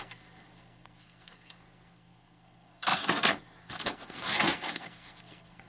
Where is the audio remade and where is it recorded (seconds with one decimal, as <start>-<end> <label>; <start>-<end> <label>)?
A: 0.0-5.7 remade